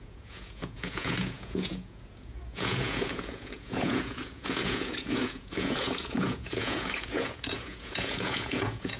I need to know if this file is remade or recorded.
remade